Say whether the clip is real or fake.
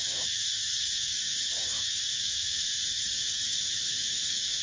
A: fake